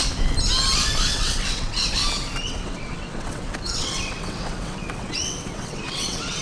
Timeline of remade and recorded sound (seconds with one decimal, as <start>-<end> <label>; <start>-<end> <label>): 0.0-1.1 recorded; 1.1-1.9 remade; 1.9-2.4 recorded; 2.4-6.4 remade